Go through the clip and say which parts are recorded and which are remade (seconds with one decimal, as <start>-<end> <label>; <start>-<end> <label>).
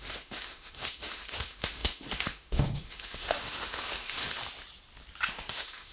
0.0-4.4 remade; 4.4-5.3 recorded; 5.3-5.9 remade